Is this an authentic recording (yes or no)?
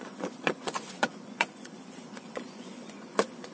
no